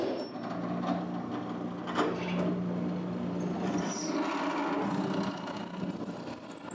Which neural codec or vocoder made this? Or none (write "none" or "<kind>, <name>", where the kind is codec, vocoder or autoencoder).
none